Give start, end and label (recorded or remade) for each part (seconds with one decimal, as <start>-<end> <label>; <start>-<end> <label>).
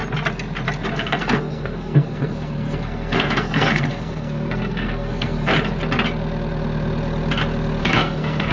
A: 0.0-0.9 recorded; 0.9-5.5 remade; 5.5-7.8 recorded; 7.8-8.5 remade